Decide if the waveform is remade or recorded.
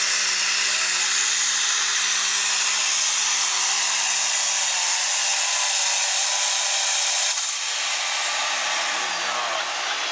recorded